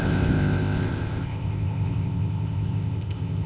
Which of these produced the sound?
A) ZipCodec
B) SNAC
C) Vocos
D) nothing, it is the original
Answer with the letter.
A